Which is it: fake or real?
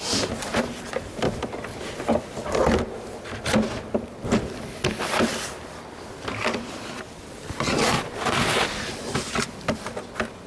real